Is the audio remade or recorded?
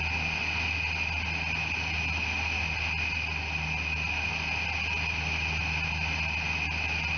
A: recorded